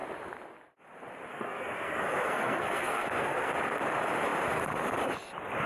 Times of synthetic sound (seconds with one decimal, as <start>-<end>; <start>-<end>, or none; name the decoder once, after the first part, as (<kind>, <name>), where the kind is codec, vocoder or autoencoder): 1.3-3.5 (codec, SNAC)